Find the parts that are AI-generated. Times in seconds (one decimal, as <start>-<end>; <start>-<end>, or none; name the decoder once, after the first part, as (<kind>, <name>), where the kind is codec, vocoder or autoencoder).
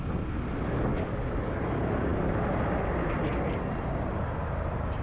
0.9-1.6 (codec, DAC)